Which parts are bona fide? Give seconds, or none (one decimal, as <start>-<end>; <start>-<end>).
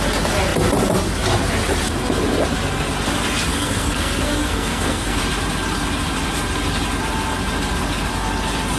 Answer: 0.0-3.5; 5.2-8.8